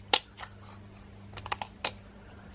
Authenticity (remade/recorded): recorded